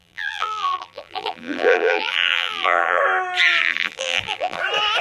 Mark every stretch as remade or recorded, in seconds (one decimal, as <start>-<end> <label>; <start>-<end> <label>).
0.0-3.0 remade; 3.0-3.6 recorded; 3.6-4.6 remade; 4.6-5.0 recorded